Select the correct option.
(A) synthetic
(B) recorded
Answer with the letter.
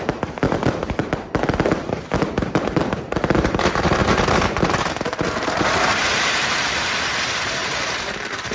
A